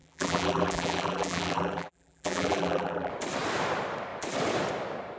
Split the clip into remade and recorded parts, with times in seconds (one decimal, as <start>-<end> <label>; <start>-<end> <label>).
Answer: 0.0-3.1 remade; 3.1-5.2 recorded